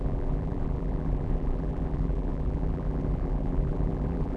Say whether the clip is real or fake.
fake